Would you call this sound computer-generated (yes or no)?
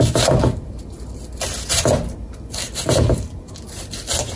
no